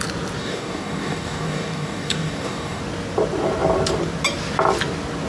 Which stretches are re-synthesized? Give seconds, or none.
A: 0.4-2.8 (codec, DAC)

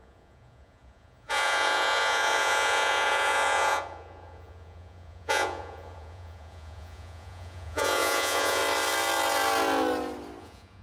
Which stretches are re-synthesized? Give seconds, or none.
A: 0.0-8.6 (vocoder, Vocos); 10.4-10.8